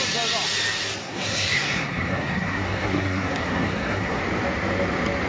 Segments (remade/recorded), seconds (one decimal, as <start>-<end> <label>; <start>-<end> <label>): 0.0-1.0 recorded; 1.0-4.2 remade; 4.2-5.3 recorded